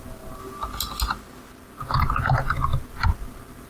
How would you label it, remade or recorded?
recorded